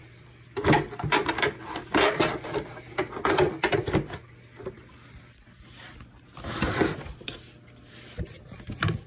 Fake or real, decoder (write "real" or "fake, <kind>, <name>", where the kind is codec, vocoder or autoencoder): real